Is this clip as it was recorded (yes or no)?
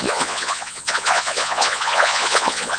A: no